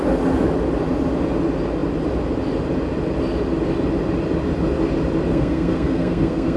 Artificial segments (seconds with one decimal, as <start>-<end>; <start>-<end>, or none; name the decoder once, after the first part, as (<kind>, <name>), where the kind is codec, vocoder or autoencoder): 5.3-6.6 (codec, SNAC)